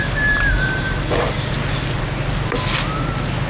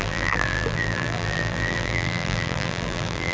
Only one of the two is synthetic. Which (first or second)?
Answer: second